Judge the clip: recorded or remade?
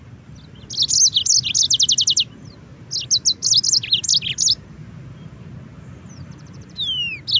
recorded